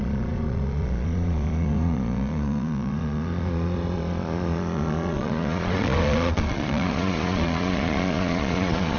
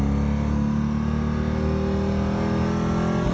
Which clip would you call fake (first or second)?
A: first